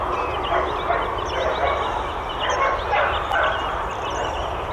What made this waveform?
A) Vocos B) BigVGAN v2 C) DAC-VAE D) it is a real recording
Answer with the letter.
D